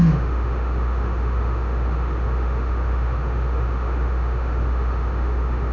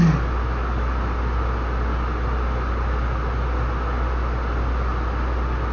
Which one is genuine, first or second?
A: second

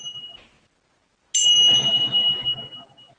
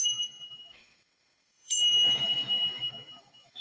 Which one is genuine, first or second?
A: first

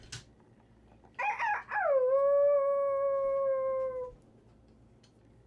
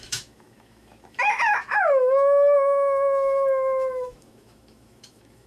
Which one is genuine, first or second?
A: first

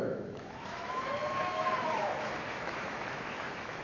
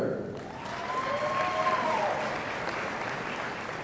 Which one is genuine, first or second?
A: second